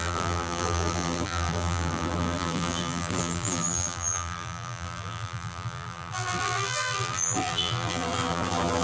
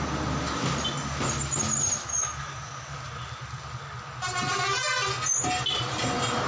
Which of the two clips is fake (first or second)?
first